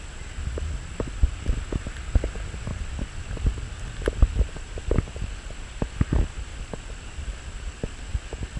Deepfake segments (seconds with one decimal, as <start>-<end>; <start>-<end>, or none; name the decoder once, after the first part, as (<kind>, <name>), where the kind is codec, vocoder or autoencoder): none